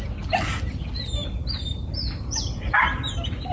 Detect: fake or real real